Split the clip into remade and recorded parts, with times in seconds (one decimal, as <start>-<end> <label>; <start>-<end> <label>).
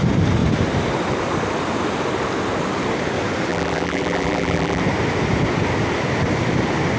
0.0-3.5 recorded; 3.5-4.8 remade; 4.8-7.0 recorded